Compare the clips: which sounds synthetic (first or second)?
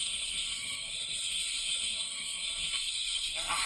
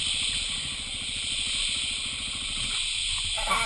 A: first